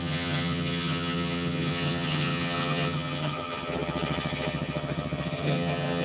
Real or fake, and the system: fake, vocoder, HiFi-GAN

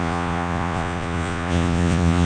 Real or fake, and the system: fake, vocoder, Vocos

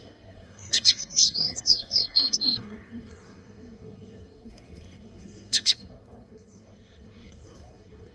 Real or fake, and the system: fake, codec, SNAC